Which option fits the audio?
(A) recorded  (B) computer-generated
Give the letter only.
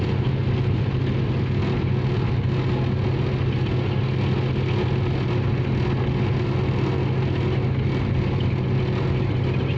A